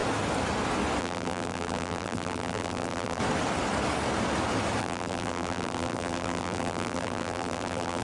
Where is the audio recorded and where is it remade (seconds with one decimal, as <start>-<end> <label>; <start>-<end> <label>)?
0.0-1.0 recorded; 1.0-3.2 remade; 3.2-4.8 recorded; 4.8-8.0 remade